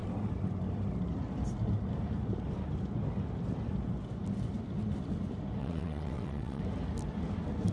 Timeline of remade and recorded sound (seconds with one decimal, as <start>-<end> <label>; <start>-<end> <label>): 0.0-5.6 recorded; 5.6-6.6 remade; 6.6-7.7 recorded